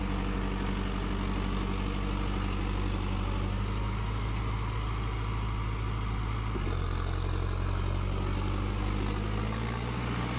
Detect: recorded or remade recorded